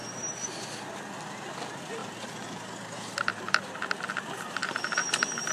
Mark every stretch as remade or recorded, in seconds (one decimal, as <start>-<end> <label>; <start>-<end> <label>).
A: 0.0-2.0 recorded; 2.0-3.4 remade; 3.4-4.6 recorded; 4.6-5.5 remade